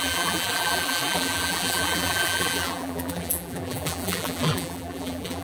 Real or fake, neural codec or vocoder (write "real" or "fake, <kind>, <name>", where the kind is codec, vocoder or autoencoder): fake, vocoder, BigVGAN v2